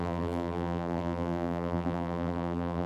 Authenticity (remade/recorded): remade